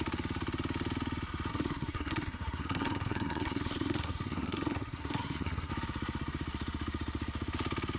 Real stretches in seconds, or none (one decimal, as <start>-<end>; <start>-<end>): 0.0-1.5; 5.7-8.0